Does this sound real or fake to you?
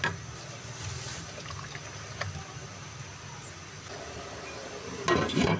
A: real